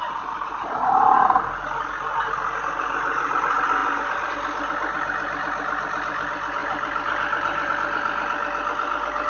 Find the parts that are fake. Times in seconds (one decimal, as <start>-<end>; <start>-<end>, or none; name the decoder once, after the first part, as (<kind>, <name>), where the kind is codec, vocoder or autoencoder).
6.6-7.7 (vocoder, BigVGAN v2)